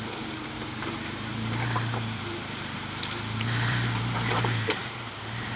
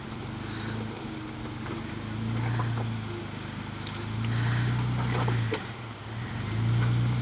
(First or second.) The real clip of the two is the second